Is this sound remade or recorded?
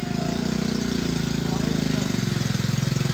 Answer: recorded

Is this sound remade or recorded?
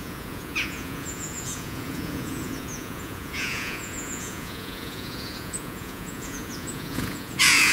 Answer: remade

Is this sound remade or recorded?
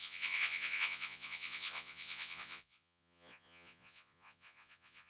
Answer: remade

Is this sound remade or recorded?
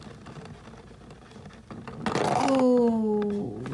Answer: recorded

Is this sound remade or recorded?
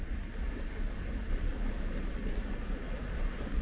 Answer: recorded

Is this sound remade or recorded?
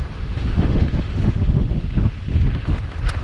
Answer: remade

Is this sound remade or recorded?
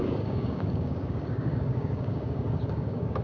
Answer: remade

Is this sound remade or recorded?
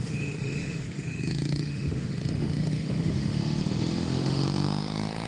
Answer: remade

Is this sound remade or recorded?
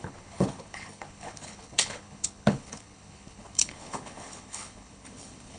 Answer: remade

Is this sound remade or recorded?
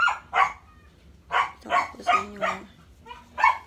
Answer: recorded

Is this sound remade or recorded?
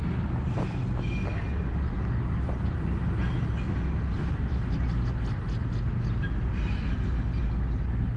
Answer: recorded